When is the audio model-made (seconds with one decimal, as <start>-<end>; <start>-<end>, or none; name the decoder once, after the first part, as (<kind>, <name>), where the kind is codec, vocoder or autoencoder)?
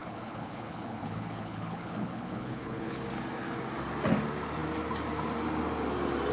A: 0.0-3.0 (codec, HILCodec)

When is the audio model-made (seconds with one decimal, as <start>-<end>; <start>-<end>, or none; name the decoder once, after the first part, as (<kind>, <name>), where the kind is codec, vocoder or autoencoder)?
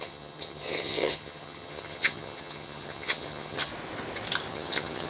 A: 0.0-3.7 (vocoder, HiFi-GAN); 4.5-5.1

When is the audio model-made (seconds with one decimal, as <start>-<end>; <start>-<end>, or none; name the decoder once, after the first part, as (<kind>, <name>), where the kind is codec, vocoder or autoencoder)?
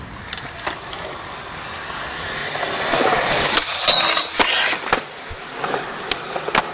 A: 2.4-3.5 (vocoder, BigVGAN v2); 5.3-6.1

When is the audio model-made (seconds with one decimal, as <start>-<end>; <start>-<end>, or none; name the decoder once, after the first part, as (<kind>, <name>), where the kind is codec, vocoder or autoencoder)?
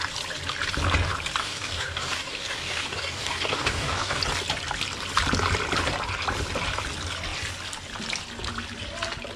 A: 1.4-4.2 (codec, DAC)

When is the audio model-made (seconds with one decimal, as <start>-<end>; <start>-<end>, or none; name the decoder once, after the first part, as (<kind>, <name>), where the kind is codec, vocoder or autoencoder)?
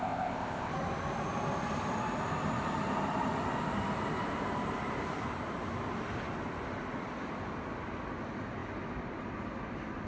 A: 0.0-0.7 (codec, ZipCodec)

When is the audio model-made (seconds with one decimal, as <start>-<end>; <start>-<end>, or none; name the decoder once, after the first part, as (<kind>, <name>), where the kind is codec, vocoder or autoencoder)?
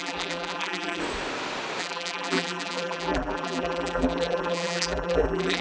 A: 0.0-1.0 (vocoder, BigVGAN v2); 1.8-5.6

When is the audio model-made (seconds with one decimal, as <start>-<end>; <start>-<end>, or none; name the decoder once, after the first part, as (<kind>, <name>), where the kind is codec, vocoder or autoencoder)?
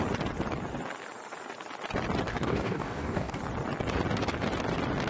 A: 2.3-3.4 (codec, DAC)